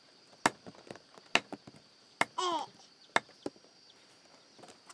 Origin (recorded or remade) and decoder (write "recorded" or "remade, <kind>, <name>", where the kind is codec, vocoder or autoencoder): recorded